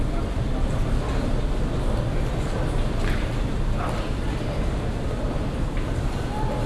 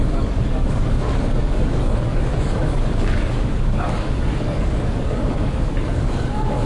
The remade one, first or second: second